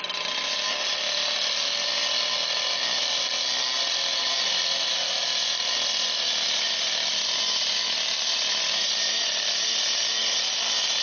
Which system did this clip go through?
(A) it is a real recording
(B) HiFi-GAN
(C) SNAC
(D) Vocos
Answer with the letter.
A